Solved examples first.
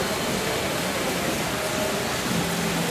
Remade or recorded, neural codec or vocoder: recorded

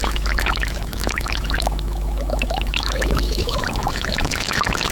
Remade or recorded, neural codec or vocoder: remade, autoencoder, DAC-VAE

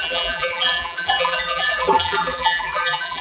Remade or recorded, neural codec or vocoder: remade, vocoder, BigVGAN v2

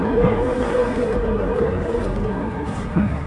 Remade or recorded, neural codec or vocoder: remade, codec, SNAC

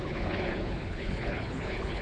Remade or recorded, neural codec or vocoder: remade, codec, HILCodec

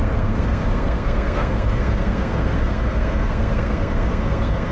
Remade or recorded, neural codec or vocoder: remade, codec, SNAC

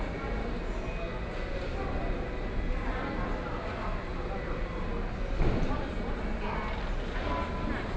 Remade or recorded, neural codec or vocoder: recorded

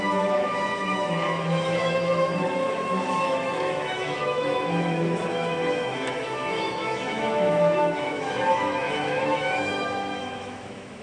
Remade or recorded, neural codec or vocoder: remade, autoencoder, DAC-VAE